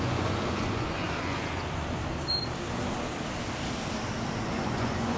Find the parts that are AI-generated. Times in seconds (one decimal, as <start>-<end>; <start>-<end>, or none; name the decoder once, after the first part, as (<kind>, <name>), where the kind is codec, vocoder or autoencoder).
0.0-2.0 (vocoder, Vocos); 4.4-5.2